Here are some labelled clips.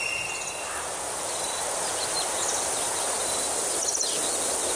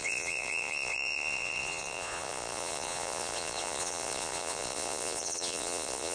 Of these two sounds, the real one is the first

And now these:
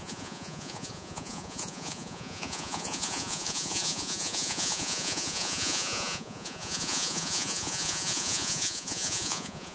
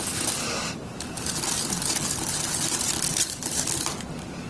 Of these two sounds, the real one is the second